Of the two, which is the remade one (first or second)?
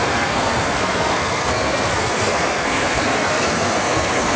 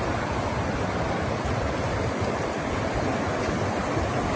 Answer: first